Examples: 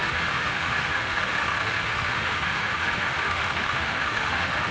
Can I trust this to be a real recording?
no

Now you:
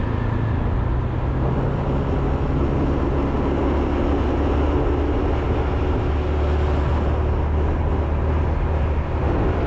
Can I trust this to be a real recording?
yes